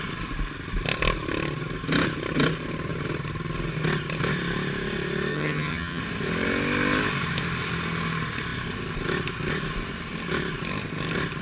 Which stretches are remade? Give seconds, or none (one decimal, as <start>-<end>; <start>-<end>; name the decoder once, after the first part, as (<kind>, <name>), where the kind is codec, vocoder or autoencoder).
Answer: 5.3-6.0 (vocoder, HiFi-GAN)